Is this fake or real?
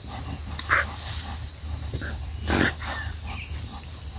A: real